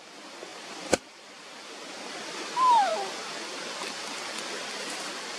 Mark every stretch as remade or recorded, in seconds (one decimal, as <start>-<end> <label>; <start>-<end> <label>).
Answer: 0.0-5.4 recorded